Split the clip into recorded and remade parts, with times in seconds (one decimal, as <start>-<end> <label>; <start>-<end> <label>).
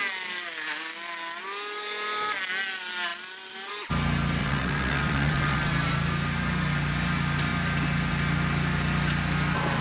0.0-4.4 recorded; 4.4-5.7 remade; 5.7-9.8 recorded